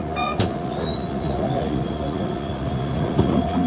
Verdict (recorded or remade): remade